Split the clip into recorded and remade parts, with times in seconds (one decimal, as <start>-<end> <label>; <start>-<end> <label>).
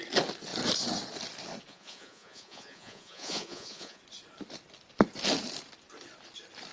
0.0-1.7 recorded; 1.7-4.0 remade; 4.0-6.7 recorded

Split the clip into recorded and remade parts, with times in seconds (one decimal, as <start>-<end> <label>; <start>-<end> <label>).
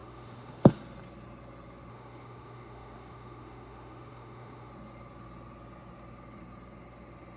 0.0-0.7 remade; 0.7-1.9 recorded; 1.9-4.7 remade; 4.7-7.4 recorded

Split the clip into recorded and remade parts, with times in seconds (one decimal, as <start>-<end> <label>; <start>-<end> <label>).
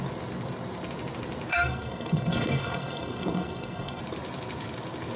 0.0-1.5 recorded; 1.5-4.0 remade; 4.0-5.2 recorded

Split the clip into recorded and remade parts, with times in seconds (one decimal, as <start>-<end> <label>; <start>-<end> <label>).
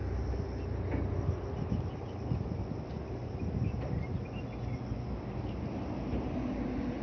0.0-7.0 recorded